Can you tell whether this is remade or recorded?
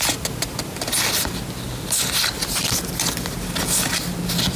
recorded